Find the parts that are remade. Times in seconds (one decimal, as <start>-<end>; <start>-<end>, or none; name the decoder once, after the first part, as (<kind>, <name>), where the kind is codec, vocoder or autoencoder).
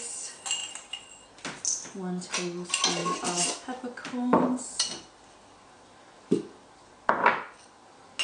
0.6-1.3 (vocoder, BigVGAN v2); 3.0-5.9